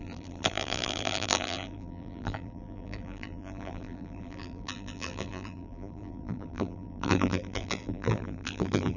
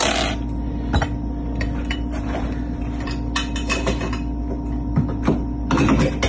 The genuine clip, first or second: second